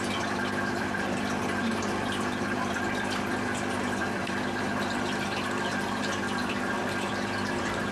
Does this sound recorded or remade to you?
remade